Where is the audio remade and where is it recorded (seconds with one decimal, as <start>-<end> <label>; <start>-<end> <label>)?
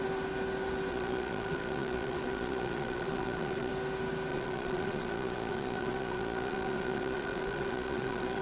0.0-0.9 recorded; 0.9-3.7 remade; 3.7-4.3 recorded; 4.3-8.4 remade